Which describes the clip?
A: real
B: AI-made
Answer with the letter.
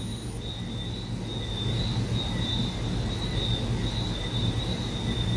A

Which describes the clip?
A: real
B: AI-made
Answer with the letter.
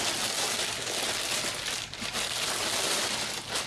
A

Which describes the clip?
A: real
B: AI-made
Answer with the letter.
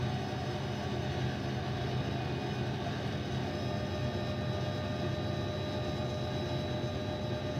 A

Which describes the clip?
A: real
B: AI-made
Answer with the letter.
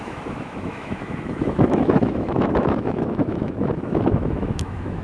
B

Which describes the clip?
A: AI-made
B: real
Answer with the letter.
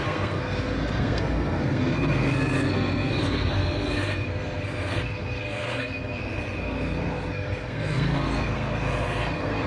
A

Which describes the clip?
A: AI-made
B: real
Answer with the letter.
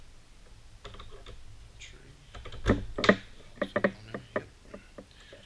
B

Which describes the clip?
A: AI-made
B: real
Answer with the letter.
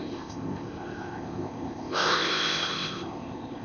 A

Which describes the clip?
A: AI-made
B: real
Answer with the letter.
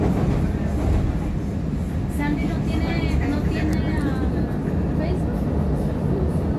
B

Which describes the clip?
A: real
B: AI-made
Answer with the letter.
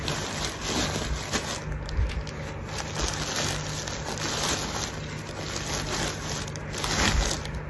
A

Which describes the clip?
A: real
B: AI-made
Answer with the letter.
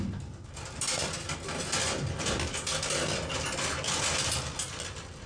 A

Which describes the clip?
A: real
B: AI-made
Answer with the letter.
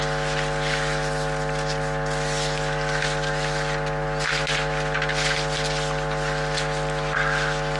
A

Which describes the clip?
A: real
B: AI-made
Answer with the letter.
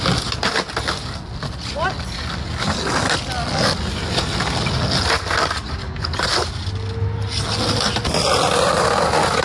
A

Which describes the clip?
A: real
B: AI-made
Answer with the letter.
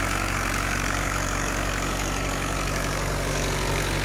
B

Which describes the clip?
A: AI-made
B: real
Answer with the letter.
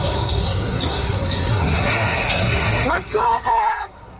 A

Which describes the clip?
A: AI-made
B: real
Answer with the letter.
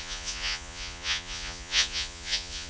A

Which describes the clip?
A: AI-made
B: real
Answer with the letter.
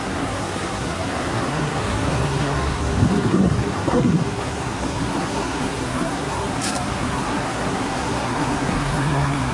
A